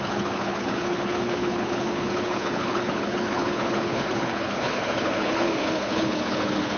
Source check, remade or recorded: remade